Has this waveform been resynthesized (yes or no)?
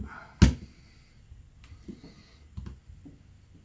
no